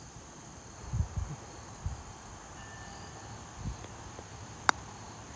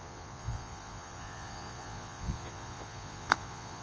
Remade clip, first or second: second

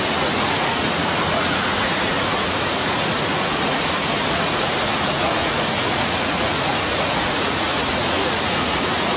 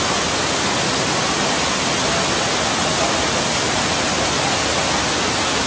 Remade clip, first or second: first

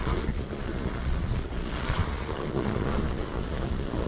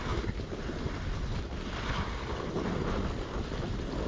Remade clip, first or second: first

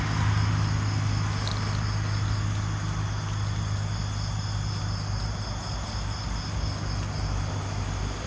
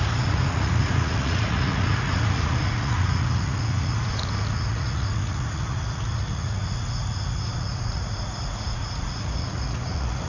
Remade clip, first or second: second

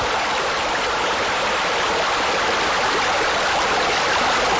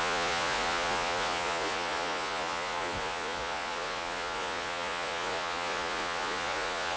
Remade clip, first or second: second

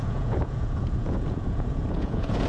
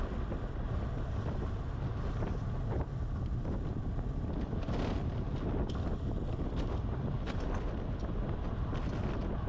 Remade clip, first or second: first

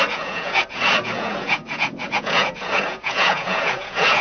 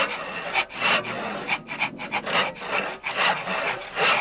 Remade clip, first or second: first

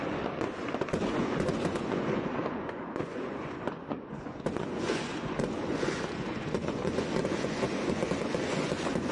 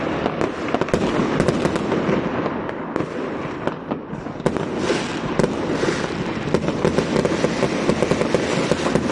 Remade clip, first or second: first